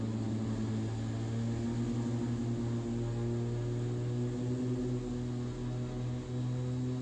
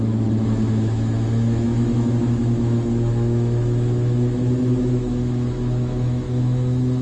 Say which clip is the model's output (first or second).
second